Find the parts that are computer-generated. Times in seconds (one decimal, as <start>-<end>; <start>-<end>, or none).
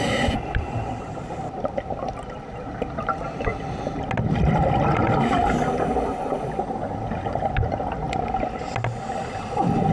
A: none